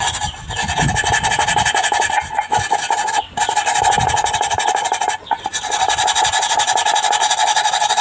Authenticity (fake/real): real